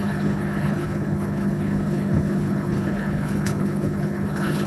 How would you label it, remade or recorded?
remade